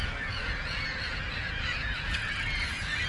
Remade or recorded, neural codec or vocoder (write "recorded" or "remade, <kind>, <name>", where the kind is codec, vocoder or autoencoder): remade, vocoder, Vocos